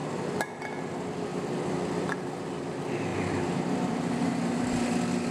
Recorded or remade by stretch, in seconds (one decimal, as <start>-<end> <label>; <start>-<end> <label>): 0.0-1.3 recorded; 1.3-2.5 remade; 2.5-3.1 recorded; 3.1-4.7 remade; 4.7-5.3 recorded